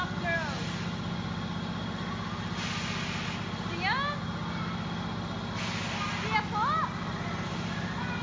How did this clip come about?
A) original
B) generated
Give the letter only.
A